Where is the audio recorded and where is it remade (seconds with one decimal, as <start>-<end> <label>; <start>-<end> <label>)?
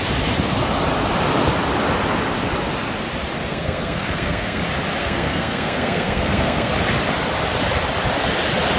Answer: 0.0-3.5 recorded; 3.5-4.6 remade; 4.6-5.0 recorded; 5.0-6.7 remade; 6.7-8.8 recorded